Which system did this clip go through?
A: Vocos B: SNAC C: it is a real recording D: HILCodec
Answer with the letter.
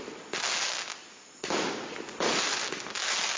C